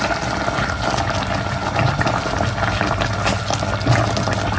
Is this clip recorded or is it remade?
recorded